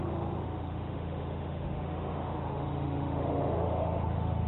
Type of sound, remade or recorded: remade